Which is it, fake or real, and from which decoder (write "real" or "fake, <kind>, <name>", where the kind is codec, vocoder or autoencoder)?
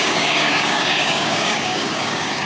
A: fake, codec, DAC